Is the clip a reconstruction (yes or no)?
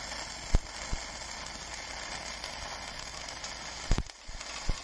no